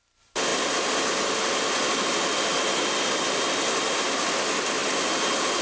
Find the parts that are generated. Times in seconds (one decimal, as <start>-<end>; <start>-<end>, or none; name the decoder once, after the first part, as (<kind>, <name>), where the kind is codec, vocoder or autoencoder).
none